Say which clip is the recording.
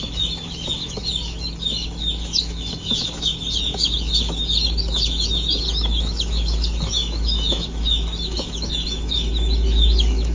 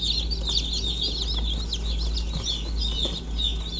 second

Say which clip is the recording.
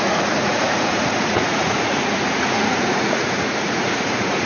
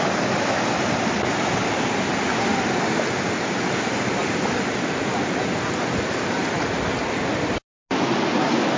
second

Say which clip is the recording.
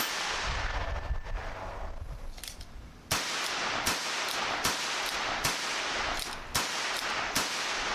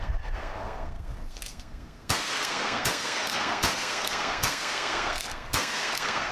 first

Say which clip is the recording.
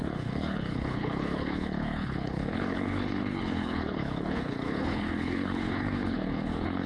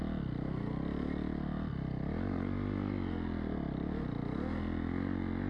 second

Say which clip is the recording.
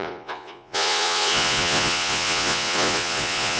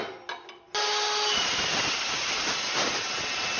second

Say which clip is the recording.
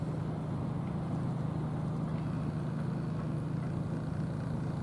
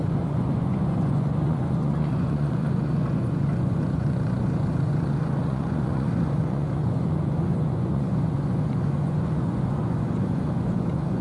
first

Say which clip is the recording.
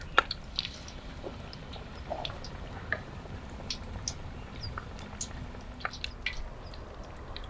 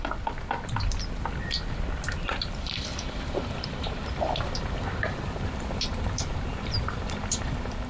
first